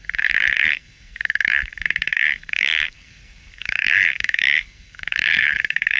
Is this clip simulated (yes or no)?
yes